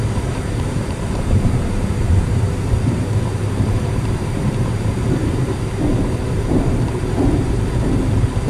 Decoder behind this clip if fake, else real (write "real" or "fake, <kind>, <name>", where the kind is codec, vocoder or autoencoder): fake, vocoder, BigVGAN v2